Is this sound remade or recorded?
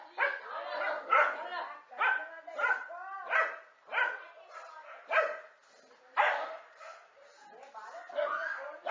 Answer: recorded